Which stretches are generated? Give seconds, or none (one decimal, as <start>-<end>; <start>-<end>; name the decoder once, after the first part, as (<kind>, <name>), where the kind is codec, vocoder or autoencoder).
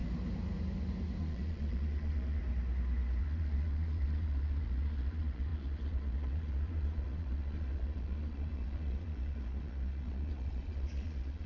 1.2-2.4 (vocoder, Vocos); 3.2-11.5